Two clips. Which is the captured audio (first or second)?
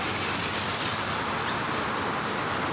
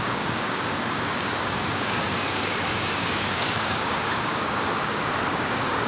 first